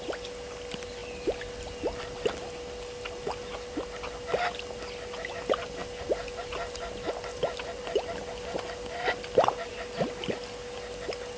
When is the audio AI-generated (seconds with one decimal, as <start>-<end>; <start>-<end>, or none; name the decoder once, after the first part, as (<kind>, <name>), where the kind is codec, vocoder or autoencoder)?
none